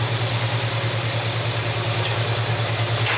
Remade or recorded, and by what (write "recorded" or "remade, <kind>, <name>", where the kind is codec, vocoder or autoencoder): recorded